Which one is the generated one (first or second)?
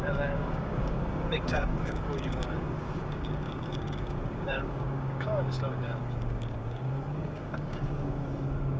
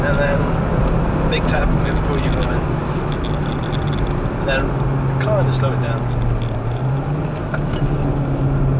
first